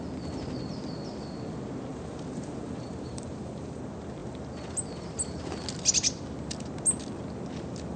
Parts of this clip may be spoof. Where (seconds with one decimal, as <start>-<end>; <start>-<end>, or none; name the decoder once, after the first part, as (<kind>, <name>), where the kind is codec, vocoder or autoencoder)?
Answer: 1.9-3.8 (vocoder, BigVGAN v2)